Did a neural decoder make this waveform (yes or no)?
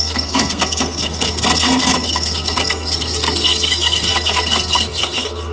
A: yes